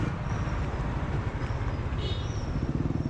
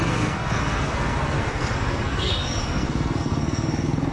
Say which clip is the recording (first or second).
first